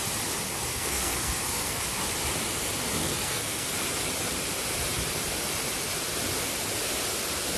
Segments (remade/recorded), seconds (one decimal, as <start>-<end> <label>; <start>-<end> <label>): 0.0-0.7 recorded; 0.7-1.8 remade; 1.8-3.0 recorded; 3.0-3.7 remade; 3.7-7.6 recorded